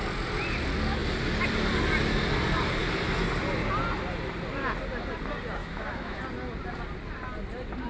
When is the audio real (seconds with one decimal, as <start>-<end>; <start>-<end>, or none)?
0.0-5.6; 6.2-7.9